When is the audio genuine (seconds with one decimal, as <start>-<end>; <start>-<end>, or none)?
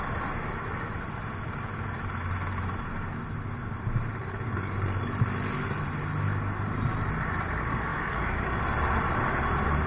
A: 0.0-7.9; 8.6-9.9